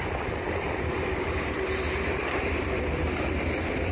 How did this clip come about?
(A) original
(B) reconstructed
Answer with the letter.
B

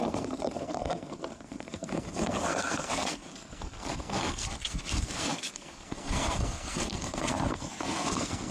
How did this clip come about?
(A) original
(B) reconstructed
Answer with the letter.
B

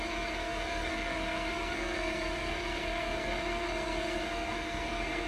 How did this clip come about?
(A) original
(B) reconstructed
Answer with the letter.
B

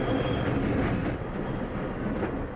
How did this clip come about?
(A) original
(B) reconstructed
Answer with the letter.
A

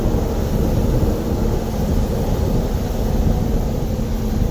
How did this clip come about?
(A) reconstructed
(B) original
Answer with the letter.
B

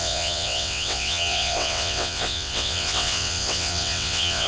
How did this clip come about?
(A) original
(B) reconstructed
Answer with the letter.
B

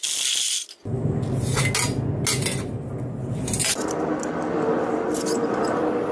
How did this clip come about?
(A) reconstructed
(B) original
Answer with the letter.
B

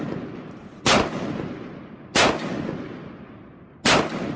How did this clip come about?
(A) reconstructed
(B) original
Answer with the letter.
B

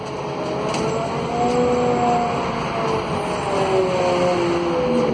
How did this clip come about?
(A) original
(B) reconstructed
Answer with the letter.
A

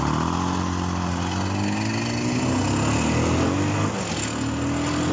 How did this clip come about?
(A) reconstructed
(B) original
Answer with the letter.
B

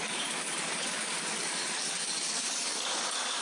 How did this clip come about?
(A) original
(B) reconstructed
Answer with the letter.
B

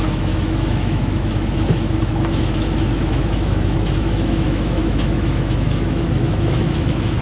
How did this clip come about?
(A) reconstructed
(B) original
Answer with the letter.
A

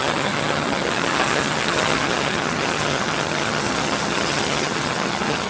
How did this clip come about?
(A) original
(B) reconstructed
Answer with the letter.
B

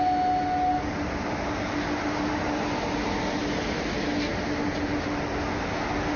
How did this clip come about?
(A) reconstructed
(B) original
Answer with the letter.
B